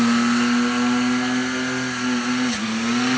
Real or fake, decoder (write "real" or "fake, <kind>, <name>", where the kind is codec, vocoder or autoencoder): real